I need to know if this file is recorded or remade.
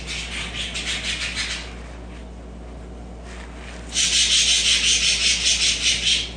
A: recorded